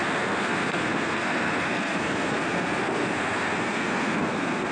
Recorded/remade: remade